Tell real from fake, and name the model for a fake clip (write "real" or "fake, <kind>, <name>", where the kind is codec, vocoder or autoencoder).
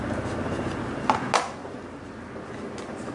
real